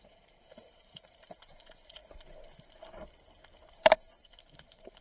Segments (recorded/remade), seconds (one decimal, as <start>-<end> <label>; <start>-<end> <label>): 0.0-2.0 remade; 2.0-3.7 recorded; 3.7-5.0 remade